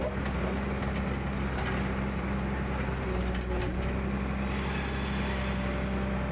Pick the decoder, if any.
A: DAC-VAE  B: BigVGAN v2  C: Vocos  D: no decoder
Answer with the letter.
D